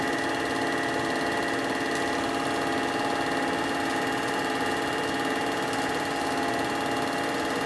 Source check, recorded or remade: recorded